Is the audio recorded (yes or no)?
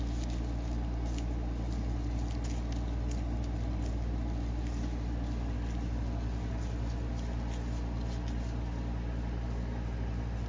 yes